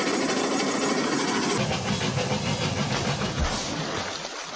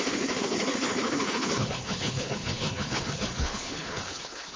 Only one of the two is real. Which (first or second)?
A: first